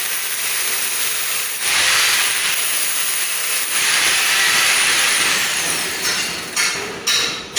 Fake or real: fake